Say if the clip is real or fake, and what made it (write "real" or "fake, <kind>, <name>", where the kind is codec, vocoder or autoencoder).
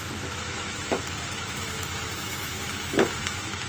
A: fake, autoencoder, DAC-VAE